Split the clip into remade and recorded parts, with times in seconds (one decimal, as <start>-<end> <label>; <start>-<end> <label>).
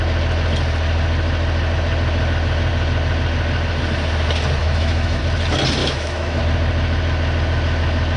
0.0-4.6 recorded; 4.6-5.2 remade; 5.2-5.8 recorded; 5.8-6.4 remade; 6.4-8.2 recorded